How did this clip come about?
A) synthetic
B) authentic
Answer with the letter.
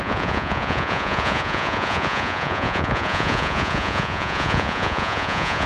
A